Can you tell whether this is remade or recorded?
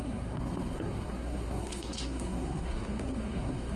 remade